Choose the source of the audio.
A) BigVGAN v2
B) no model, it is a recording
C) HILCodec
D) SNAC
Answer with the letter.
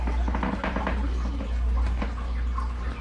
B